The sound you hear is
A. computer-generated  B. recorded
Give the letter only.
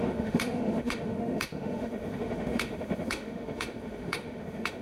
A